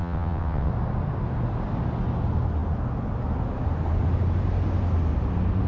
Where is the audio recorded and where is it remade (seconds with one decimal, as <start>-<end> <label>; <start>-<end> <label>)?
0.0-0.7 remade; 0.7-5.7 recorded